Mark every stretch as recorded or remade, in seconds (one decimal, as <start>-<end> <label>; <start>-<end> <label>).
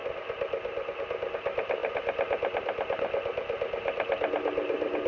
0.0-5.1 recorded